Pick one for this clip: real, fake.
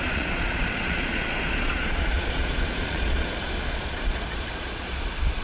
fake